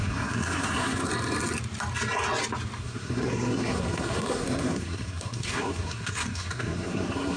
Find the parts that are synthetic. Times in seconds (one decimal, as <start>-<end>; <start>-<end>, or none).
0.0-1.1; 2.8-7.4